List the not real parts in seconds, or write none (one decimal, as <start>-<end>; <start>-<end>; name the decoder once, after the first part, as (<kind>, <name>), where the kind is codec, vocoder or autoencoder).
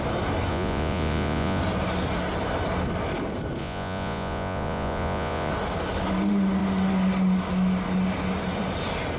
0.5-1.6 (vocoder, Vocos); 3.6-5.5